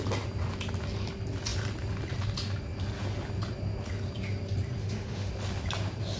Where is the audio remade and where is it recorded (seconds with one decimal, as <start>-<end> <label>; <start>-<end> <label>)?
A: 0.0-4.8 recorded; 4.8-5.3 remade; 5.3-6.2 recorded

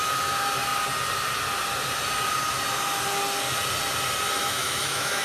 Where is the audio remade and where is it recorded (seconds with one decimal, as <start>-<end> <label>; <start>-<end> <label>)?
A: 0.0-4.4 recorded; 4.4-5.2 remade

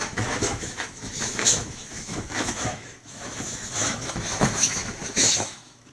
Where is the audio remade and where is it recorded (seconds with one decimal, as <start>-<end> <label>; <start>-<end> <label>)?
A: 0.0-5.9 remade

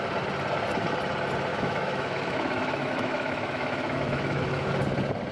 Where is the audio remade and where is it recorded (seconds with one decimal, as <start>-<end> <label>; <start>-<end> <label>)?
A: 0.0-1.5 recorded; 1.5-4.7 remade; 4.7-5.3 recorded